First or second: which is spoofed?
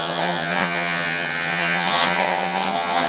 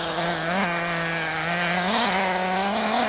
first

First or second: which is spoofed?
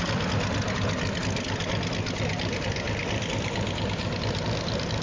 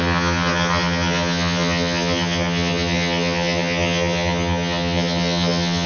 second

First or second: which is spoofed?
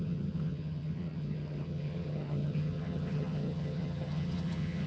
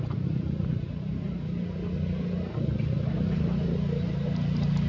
first